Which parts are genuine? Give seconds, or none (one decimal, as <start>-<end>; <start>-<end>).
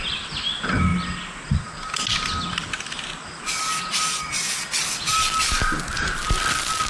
0.0-6.9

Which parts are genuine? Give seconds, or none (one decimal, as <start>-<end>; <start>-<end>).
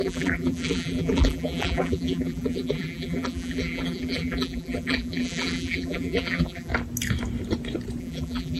6.7-8.0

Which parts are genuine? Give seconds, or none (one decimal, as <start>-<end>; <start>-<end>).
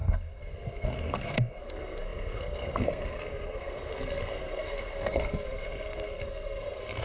none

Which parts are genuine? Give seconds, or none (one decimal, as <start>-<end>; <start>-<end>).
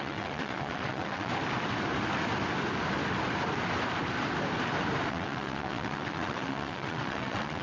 1.3-5.1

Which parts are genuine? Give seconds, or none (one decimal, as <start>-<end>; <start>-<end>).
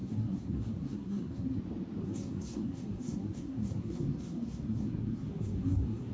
1.6-2.0